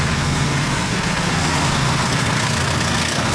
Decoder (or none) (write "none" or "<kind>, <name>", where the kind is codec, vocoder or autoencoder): codec, SNAC